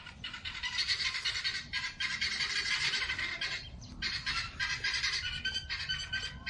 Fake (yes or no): yes